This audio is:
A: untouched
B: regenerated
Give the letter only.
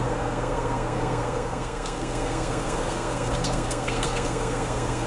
B